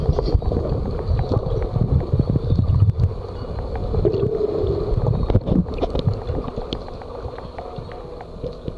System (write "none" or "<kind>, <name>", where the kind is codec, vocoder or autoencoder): none